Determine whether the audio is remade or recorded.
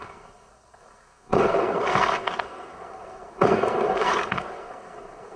remade